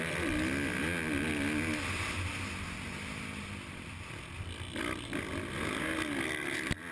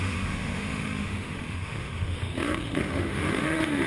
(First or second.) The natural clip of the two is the first